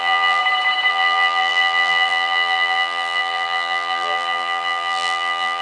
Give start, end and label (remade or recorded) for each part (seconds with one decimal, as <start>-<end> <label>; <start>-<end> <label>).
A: 0.0-0.4 remade; 0.4-0.9 recorded; 0.9-5.6 remade